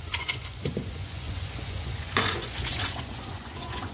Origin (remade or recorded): remade